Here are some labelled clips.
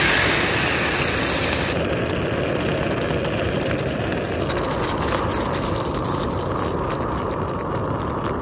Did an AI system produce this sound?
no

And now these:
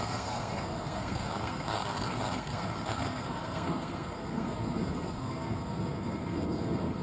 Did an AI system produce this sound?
yes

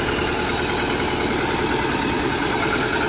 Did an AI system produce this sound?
no